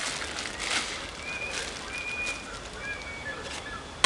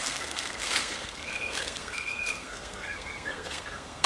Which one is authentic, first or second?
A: first